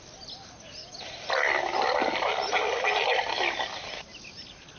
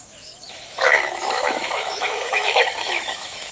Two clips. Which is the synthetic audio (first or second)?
second